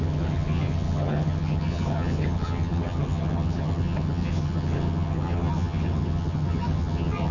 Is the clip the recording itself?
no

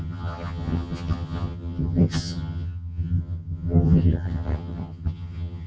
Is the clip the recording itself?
no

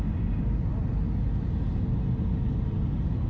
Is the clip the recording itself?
yes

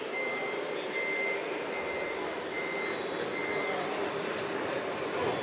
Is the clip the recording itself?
yes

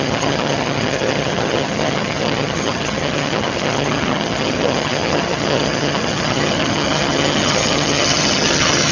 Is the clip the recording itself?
no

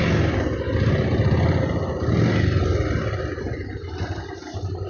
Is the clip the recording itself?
yes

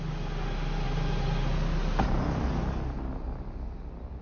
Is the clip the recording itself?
yes